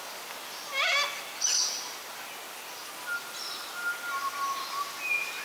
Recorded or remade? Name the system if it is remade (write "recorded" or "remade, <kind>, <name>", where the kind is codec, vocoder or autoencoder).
recorded